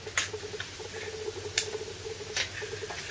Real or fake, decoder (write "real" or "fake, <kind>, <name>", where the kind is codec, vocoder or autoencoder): real